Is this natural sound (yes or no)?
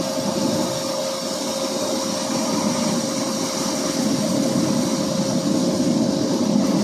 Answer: yes